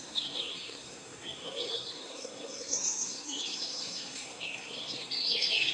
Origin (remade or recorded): remade